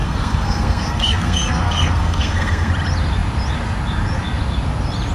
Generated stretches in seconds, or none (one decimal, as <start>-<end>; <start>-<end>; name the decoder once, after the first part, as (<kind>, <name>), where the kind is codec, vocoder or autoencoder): 0.0-2.7 (codec, SNAC)